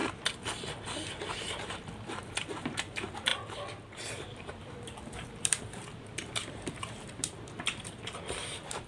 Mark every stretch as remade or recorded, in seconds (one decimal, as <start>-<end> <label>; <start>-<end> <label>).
0.0-1.3 recorded; 1.3-3.3 remade; 3.3-4.1 recorded; 4.1-8.9 remade